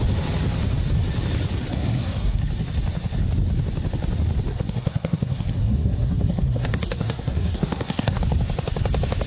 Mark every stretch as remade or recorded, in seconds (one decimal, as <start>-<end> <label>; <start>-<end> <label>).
0.0-1.7 recorded; 1.7-2.4 remade; 2.4-4.5 recorded; 4.5-8.2 remade; 8.2-9.3 recorded